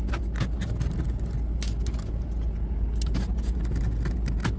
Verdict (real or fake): real